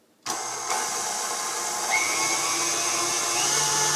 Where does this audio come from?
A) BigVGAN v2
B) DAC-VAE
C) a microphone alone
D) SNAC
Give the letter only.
C